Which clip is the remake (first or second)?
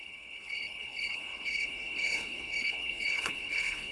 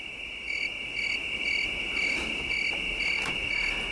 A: first